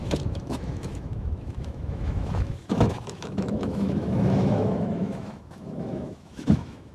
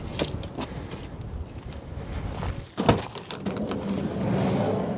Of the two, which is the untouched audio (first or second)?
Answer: second